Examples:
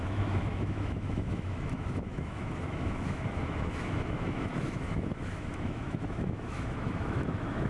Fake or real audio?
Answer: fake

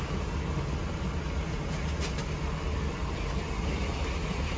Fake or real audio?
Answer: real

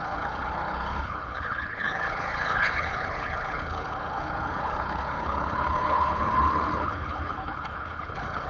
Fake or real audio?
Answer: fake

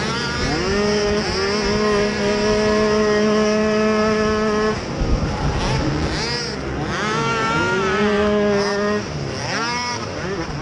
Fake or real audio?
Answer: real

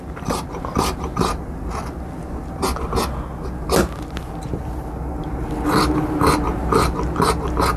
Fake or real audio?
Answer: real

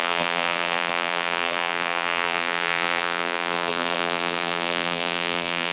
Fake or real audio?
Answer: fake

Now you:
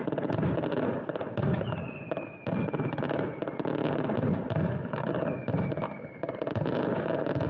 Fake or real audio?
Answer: real